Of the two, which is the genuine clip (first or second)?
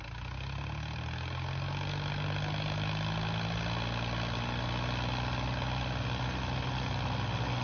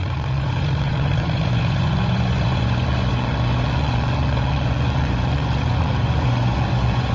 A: first